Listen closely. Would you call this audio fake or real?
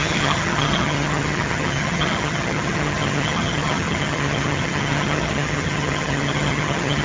fake